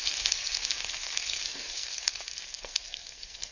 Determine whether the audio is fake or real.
fake